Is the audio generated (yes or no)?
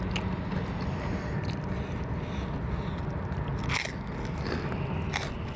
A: no